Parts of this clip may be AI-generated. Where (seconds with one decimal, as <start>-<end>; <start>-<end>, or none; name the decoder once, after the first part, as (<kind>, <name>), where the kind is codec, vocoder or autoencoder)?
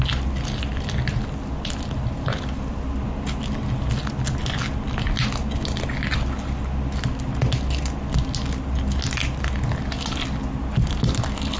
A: none